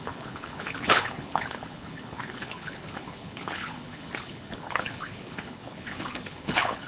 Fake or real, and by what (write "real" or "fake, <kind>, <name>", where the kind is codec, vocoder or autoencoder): fake, codec, HILCodec